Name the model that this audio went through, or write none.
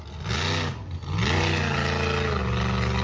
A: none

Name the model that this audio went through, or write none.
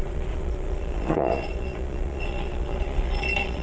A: vocoder, Vocos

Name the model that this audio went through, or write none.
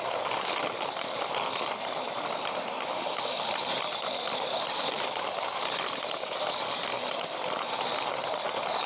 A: vocoder, BigVGAN v2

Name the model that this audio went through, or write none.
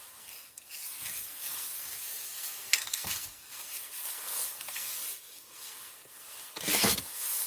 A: codec, SNAC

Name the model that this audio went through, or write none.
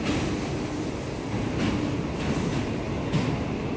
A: none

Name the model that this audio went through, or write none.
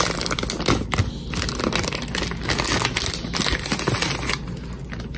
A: none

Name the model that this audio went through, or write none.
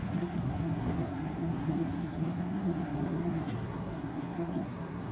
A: codec, SNAC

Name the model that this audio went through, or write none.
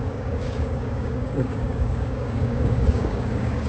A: codec, DAC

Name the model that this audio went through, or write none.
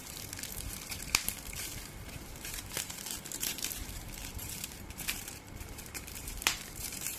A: vocoder, BigVGAN v2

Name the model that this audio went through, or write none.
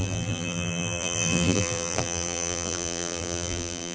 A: vocoder, BigVGAN v2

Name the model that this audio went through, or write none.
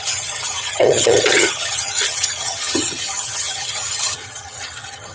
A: vocoder, HiFi-GAN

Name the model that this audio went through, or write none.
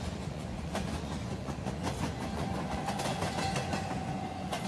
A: vocoder, Vocos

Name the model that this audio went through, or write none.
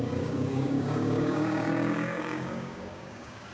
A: codec, DAC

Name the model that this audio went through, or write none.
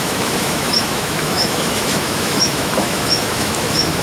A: autoencoder, DAC-VAE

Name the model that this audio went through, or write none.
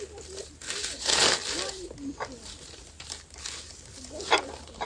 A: none